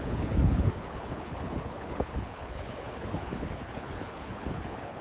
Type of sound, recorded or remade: remade